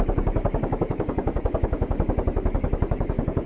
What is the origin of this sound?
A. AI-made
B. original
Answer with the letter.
A